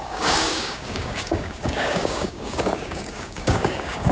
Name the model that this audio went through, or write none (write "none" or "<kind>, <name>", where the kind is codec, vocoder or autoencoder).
codec, DAC